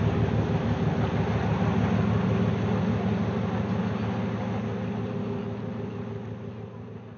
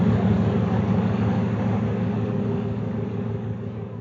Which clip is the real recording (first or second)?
first